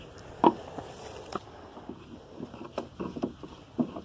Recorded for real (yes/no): yes